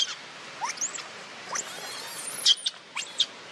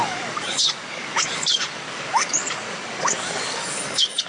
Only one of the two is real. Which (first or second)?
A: first